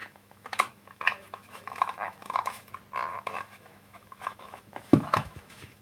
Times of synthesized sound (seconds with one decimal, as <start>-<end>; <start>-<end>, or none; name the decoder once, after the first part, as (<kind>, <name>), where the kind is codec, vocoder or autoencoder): 0.0-2.7 (autoencoder, DAC-VAE); 3.1-5.8